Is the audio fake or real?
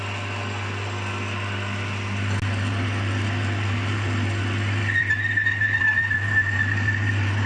real